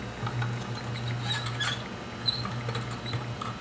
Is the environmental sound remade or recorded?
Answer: recorded